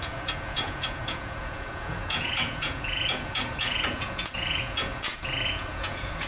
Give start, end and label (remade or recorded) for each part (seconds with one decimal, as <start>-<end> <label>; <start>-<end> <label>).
0.0-6.3 remade